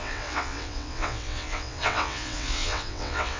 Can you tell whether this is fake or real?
fake